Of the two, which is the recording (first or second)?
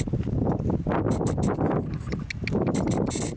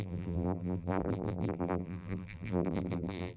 first